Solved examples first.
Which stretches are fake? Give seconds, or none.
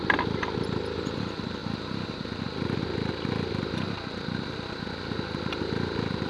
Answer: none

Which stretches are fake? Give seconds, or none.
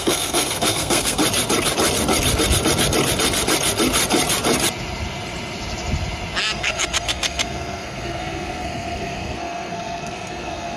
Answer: 0.0-1.2 (codec, SNAC); 6.4-10.8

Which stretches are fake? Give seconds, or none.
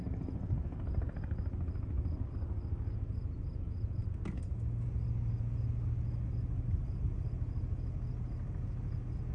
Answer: none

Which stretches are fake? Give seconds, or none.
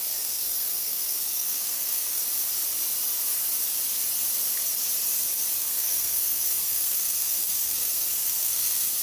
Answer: 0.0-2.2 (codec, SNAC); 5.6-9.0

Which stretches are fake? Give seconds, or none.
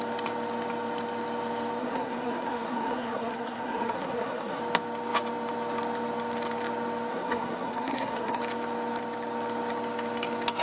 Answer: 1.8-4.6 (codec, SNAC); 7.1-8.4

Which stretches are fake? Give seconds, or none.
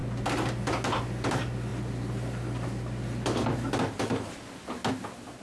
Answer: none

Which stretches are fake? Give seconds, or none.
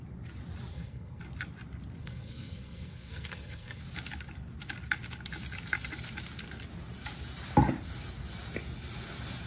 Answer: 0.7-1.2 (codec, SNAC); 2.0-3.8